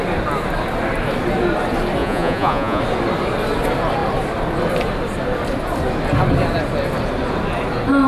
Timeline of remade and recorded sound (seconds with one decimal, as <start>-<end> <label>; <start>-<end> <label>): 0.0-2.0 recorded; 2.0-2.8 remade; 2.8-8.1 recorded